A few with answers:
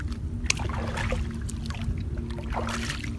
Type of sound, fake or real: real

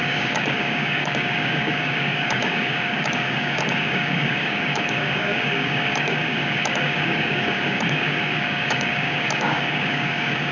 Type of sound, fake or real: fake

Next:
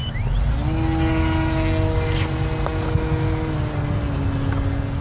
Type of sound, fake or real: real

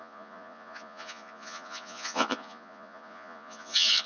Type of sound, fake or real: fake